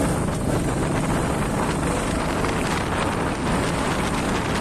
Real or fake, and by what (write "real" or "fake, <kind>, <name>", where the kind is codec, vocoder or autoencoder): real